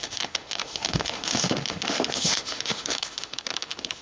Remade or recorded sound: remade